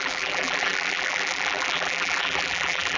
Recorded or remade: remade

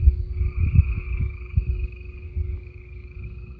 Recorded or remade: remade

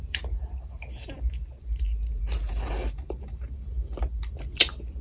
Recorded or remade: remade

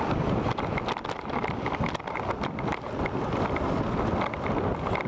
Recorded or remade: recorded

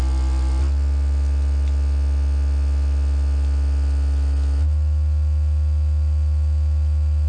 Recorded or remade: recorded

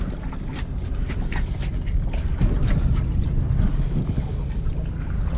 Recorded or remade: recorded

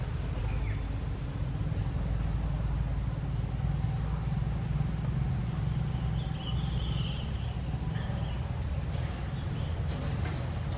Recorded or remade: recorded